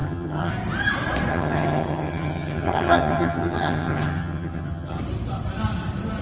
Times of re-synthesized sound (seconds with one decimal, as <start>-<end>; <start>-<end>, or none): 0.0-0.5; 1.3-5.0